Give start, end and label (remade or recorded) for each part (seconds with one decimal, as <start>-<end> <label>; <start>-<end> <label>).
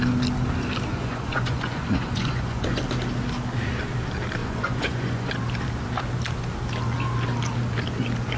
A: 0.0-0.9 recorded; 0.9-2.8 remade; 2.8-4.4 recorded; 4.4-5.3 remade; 5.3-8.4 recorded